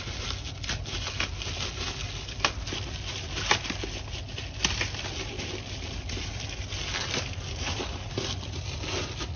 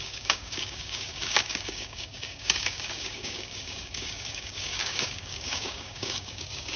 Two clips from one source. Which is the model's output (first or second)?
second